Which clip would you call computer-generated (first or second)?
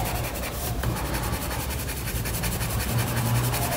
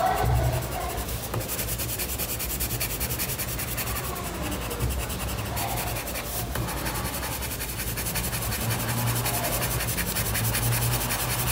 first